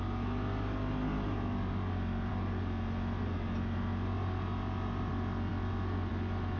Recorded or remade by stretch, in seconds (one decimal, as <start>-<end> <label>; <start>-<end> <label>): 0.0-6.6 recorded